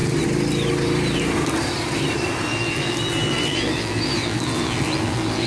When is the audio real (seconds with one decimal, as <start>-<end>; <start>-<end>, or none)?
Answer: 0.0-2.5